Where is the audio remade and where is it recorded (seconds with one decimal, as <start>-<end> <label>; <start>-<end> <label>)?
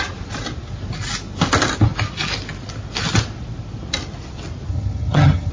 0.0-4.7 recorded; 4.7-5.5 remade